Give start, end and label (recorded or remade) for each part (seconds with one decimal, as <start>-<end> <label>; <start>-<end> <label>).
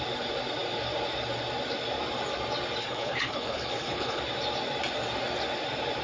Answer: 0.0-2.8 recorded; 2.8-4.2 remade; 4.2-6.0 recorded